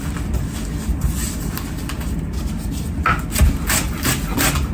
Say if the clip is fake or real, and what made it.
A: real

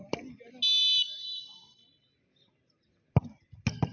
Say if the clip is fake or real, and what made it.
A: real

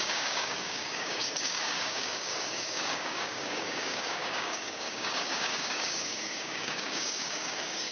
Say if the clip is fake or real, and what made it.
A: fake, codec, DAC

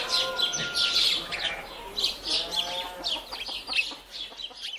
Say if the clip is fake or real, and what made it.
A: real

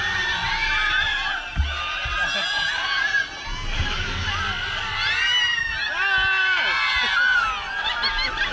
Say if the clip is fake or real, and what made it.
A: real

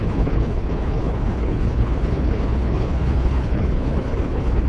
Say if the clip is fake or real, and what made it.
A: fake, codec, HILCodec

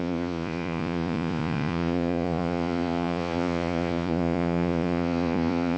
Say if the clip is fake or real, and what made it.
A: fake, vocoder, Vocos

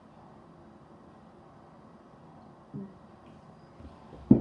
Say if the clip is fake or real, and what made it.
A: real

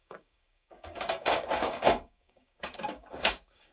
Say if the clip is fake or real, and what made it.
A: fake, codec, DAC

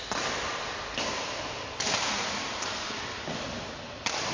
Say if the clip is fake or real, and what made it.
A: real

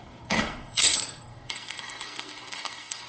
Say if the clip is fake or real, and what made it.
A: fake, codec, SNAC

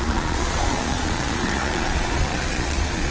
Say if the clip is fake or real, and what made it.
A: fake, vocoder, Vocos